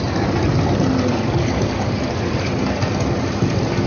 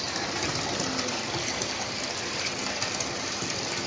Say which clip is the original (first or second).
first